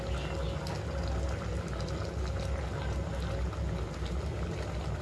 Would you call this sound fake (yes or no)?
no